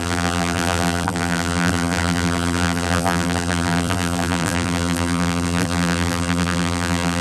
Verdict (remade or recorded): remade